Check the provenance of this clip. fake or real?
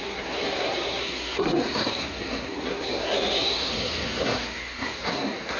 fake